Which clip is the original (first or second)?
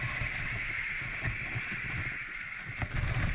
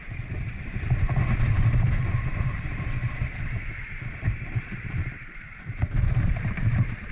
first